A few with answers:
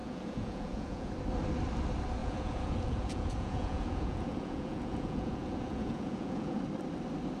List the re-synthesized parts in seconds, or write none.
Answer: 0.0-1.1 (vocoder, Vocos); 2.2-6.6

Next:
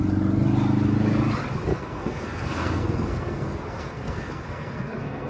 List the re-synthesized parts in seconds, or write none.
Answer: 1.7-5.3 (codec, SNAC)